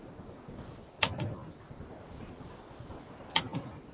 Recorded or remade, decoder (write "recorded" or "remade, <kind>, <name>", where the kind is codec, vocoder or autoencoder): recorded